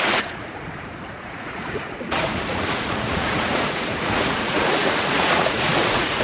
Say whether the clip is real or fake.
fake